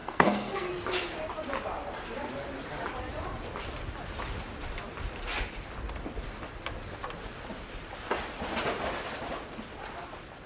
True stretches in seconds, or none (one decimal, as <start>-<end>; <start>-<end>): 0.7-10.5